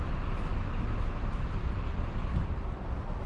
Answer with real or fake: real